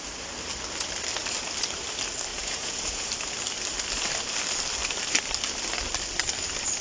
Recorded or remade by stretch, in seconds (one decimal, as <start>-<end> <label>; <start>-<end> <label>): 0.0-2.3 recorded; 2.3-3.1 remade; 3.1-6.8 recorded